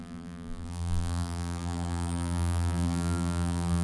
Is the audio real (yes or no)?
no